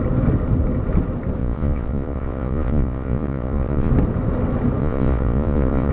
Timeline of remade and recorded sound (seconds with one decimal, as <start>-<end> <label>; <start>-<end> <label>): 0.0-1.4 recorded; 1.4-3.9 remade; 3.9-4.8 recorded; 4.8-5.9 remade